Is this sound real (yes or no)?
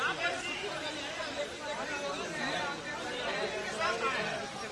yes